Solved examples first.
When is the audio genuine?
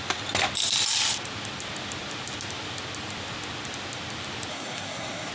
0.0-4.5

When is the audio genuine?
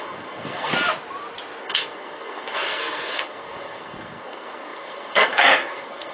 0.7-1.6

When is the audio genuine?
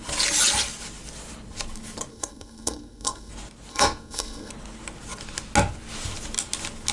0.0-2.1; 3.3-3.7; 4.5-6.9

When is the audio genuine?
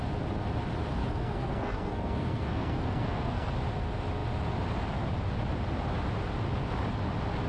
0.0-1.0; 3.5-7.5